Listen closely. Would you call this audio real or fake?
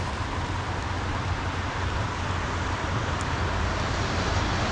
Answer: real